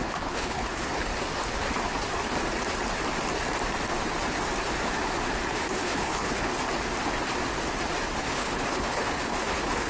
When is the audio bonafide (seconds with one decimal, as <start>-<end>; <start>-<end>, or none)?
1.1-5.5; 6.5-8.2